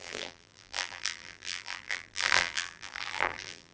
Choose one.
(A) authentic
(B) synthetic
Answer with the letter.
B